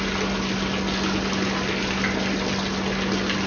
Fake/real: real